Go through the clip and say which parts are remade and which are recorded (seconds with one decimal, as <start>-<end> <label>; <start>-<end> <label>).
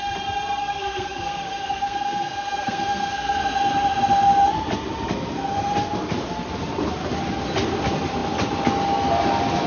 0.0-0.6 recorded; 0.6-3.4 remade; 3.4-9.7 recorded